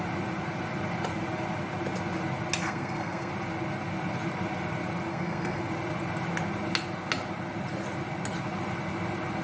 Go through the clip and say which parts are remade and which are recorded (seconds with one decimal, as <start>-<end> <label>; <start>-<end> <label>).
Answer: 0.0-2.6 recorded; 2.6-3.3 remade; 3.3-5.1 recorded; 5.1-5.6 remade; 5.6-9.4 recorded